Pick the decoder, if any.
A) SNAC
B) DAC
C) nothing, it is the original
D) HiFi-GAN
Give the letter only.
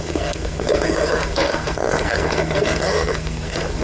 A